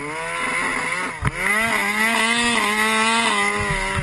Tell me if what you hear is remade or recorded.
recorded